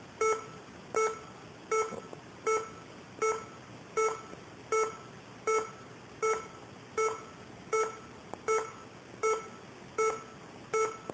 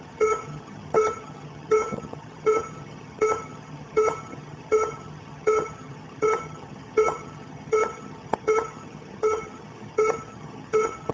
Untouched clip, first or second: first